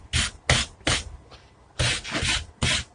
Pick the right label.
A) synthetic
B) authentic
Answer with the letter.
B